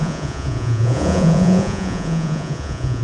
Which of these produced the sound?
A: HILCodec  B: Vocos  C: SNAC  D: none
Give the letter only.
B